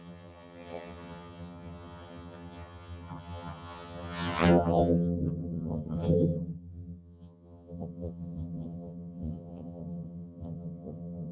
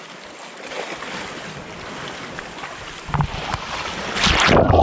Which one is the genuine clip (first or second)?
second